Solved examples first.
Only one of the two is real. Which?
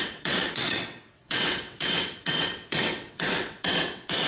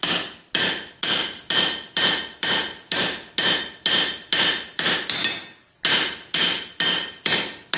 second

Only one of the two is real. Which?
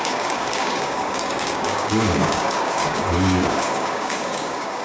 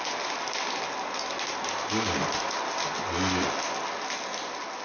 second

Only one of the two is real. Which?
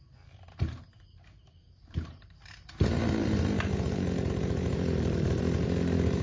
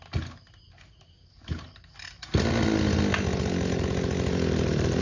second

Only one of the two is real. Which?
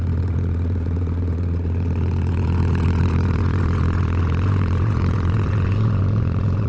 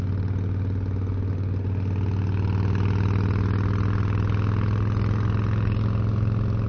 second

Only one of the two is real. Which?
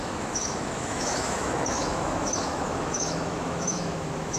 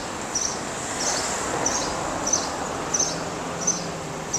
second